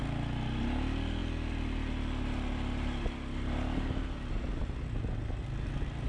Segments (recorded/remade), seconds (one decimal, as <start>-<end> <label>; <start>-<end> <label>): 0.0-6.1 recorded